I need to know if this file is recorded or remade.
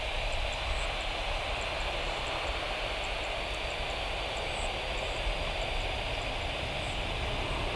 recorded